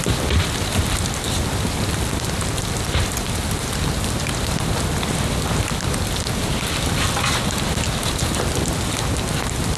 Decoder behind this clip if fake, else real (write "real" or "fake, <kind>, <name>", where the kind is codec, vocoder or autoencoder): real